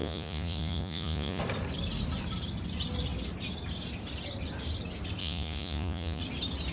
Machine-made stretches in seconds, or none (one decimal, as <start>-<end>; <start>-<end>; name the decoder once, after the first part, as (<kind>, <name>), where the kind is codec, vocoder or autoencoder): 0.0-1.4 (vocoder, Vocos); 5.2-6.2